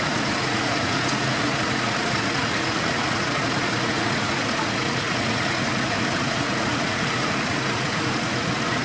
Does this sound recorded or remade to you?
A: remade